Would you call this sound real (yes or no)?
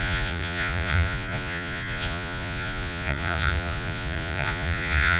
no